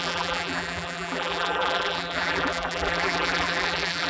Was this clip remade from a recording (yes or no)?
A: yes